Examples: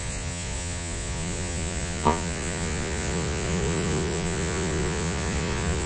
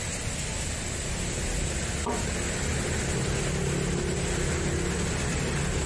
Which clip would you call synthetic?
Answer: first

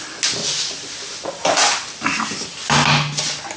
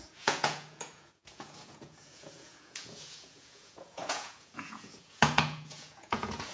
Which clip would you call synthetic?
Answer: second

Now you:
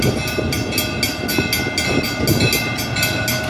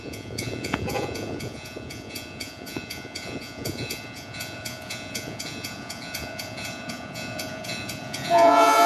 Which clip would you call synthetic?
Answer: second